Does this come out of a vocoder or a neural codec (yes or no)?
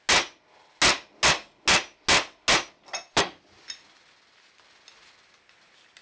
no